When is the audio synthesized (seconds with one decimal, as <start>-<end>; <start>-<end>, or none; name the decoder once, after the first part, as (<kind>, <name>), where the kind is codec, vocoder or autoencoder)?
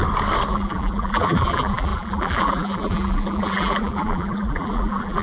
0.5-5.2 (vocoder, BigVGAN v2)